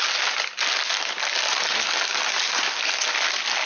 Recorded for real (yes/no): yes